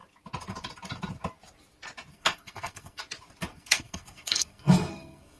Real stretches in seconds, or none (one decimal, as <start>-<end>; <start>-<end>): 0.0-2.1; 3.0-3.5